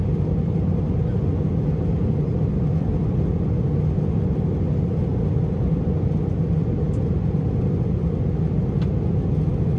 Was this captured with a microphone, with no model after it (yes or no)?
yes